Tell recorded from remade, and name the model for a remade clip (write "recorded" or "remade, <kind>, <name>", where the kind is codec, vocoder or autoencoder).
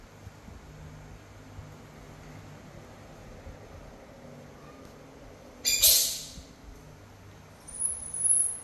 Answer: recorded